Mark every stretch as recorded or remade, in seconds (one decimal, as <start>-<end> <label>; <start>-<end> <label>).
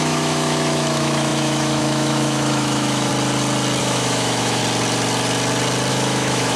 0.0-3.1 remade; 3.1-3.8 recorded; 3.8-4.6 remade; 4.6-5.9 recorded; 5.9-6.6 remade